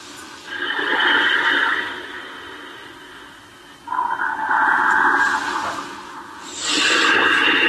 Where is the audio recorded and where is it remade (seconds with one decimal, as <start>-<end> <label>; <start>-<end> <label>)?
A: 0.0-7.7 recorded